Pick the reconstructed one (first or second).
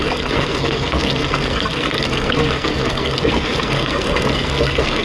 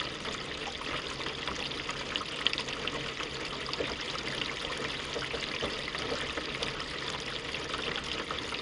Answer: first